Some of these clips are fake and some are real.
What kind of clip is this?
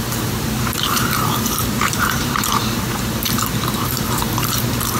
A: fake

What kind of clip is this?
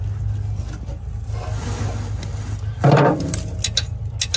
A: real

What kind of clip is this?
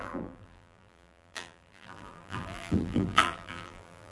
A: fake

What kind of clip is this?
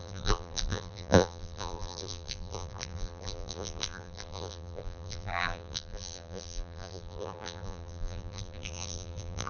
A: fake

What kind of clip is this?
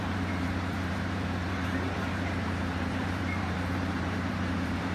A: fake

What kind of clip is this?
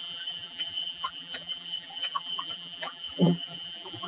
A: fake